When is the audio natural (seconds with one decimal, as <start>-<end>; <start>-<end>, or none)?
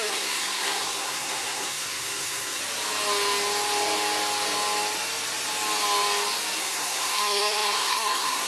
2.6-6.6